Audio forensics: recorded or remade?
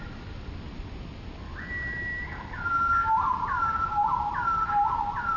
recorded